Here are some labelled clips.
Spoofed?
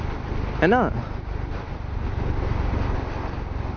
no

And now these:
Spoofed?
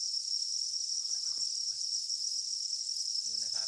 no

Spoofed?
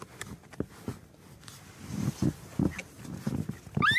no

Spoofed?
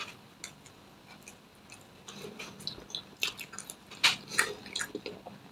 no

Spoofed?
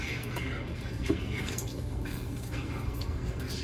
yes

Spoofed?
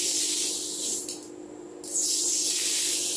no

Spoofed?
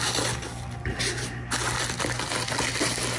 no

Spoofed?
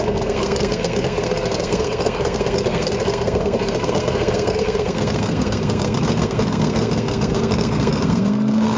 yes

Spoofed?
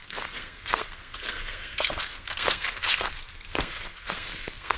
yes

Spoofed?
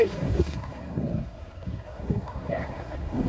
yes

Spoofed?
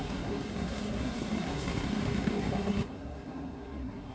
yes